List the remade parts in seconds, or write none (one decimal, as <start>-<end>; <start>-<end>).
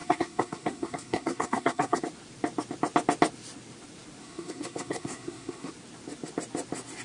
0.0-2.0; 4.2-5.7